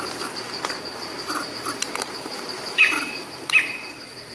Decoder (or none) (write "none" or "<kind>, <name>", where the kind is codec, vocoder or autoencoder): vocoder, BigVGAN v2